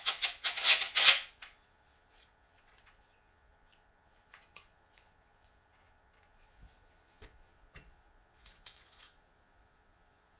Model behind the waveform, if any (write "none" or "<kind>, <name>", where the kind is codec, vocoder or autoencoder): vocoder, Vocos